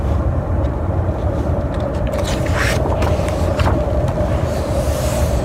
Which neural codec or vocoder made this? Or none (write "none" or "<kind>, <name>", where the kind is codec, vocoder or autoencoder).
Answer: none